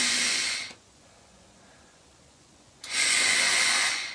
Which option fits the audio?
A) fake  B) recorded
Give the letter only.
A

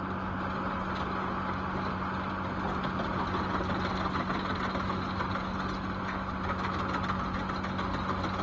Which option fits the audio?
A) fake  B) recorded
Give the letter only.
B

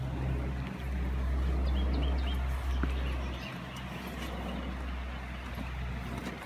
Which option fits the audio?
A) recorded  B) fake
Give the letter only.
A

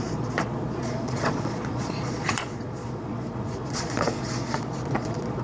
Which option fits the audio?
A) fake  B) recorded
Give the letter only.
A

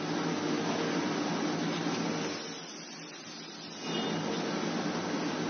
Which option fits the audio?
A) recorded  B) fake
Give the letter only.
A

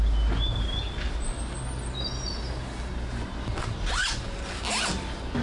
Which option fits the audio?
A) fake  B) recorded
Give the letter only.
B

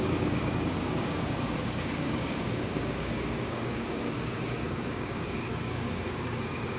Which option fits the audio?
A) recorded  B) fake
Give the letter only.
B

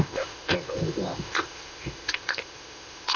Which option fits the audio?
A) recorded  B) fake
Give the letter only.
B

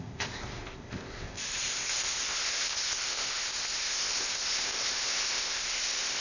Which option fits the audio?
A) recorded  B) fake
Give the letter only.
B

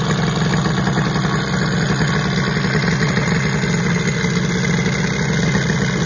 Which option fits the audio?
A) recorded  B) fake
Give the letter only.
A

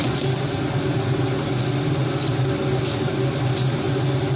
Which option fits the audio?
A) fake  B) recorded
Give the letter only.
B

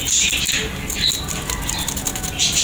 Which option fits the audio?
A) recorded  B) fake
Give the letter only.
A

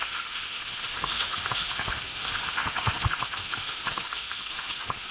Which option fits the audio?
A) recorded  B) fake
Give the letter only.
B